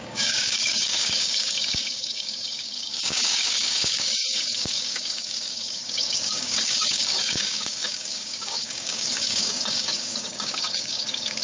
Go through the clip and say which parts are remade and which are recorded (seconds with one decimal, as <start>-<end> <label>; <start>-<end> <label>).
0.0-11.4 remade